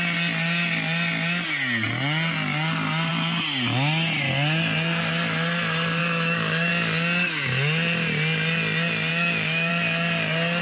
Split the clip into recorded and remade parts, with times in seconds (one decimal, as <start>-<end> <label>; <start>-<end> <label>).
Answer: 0.0-6.0 recorded; 6.0-6.7 remade; 6.7-9.1 recorded; 9.1-9.7 remade; 9.7-10.6 recorded